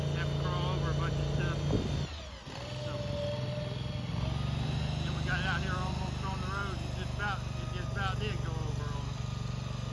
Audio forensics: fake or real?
real